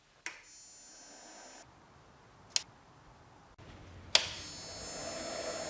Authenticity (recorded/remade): recorded